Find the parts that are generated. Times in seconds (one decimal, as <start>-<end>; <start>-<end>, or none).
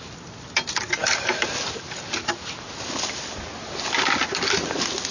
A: none